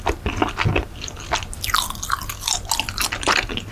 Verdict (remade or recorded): recorded